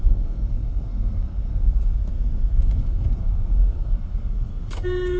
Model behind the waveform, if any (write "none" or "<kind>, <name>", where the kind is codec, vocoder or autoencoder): codec, SNAC